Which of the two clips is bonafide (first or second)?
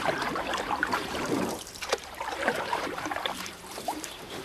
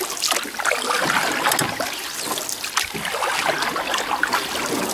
second